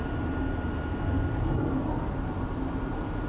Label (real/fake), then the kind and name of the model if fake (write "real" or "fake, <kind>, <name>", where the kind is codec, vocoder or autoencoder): real